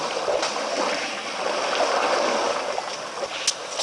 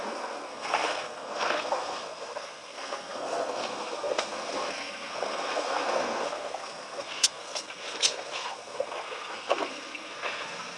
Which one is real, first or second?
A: first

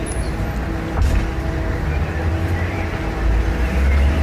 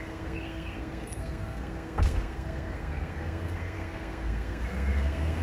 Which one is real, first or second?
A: first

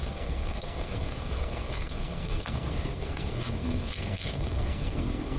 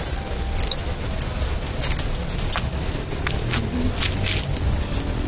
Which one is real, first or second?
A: second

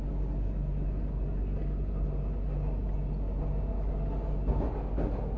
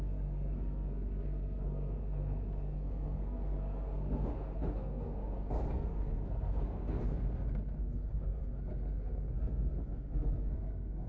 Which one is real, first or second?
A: first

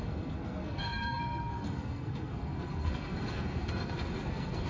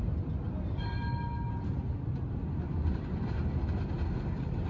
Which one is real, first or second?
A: second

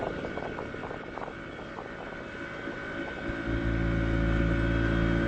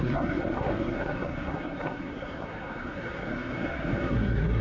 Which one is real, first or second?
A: first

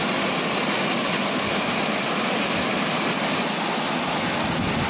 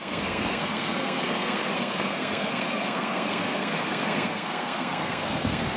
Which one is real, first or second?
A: first